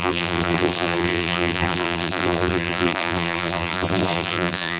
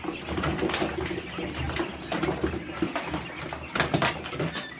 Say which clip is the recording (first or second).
second